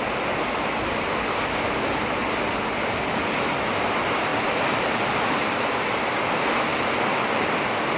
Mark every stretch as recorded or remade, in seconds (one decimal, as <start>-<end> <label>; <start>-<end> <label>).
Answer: 0.0-4.3 recorded; 4.3-6.0 remade; 6.0-6.7 recorded; 6.7-8.0 remade